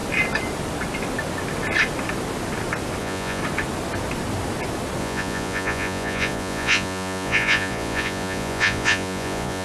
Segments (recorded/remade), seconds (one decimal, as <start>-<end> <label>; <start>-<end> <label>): 0.0-3.0 recorded; 3.0-3.4 remade; 3.4-5.0 recorded; 5.0-9.6 remade

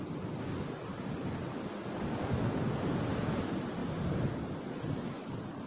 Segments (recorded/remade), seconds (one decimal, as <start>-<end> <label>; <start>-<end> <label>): 0.0-5.7 recorded

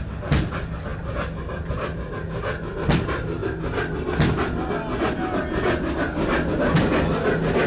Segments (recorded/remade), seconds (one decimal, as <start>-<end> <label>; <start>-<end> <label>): 0.0-7.7 recorded

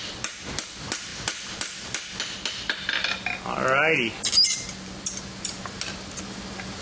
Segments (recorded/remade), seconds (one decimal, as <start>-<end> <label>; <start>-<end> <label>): 0.0-6.8 recorded

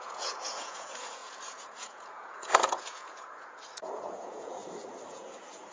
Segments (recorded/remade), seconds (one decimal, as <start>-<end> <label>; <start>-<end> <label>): 0.0-4.6 remade; 4.6-5.1 recorded; 5.1-5.7 remade